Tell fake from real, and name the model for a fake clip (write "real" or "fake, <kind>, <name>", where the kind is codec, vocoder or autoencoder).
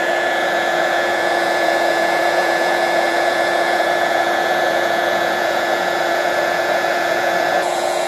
fake, vocoder, Vocos